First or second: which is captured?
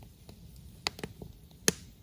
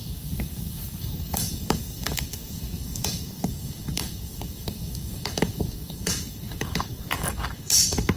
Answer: first